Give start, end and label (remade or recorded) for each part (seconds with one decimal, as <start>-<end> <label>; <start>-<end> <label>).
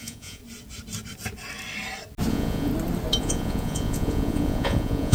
0.0-0.4 remade; 0.4-2.3 recorded; 2.3-2.7 remade; 2.7-3.2 recorded; 3.2-5.1 remade